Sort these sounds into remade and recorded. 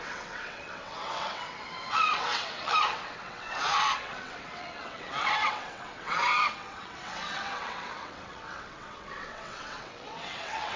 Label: remade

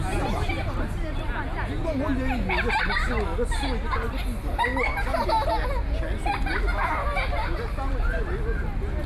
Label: recorded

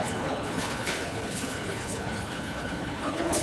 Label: remade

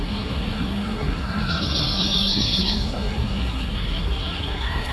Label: remade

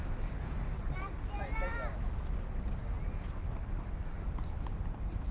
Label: recorded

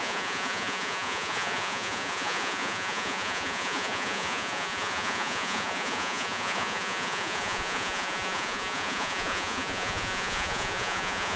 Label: remade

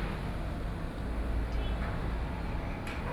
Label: recorded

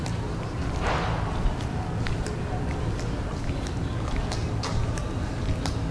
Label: recorded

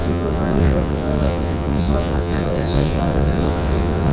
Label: remade